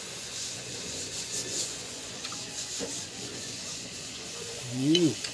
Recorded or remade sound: remade